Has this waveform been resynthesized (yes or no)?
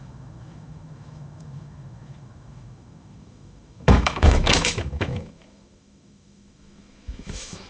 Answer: yes